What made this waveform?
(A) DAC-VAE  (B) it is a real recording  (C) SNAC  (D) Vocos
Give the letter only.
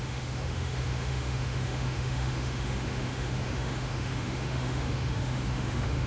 A